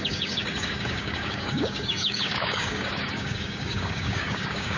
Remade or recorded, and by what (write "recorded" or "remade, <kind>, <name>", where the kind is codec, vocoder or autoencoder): remade, codec, DAC